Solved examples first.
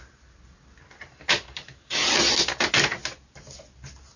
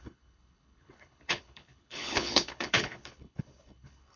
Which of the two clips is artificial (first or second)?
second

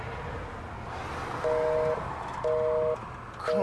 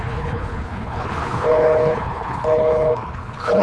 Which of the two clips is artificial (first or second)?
second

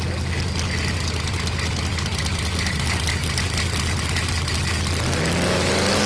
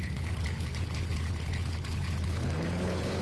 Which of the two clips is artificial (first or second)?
second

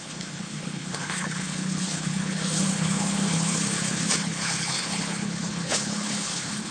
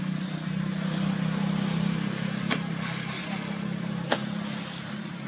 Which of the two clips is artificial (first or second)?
first